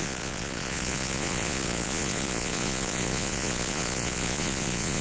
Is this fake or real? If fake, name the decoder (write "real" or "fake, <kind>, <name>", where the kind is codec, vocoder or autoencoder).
fake, vocoder, Vocos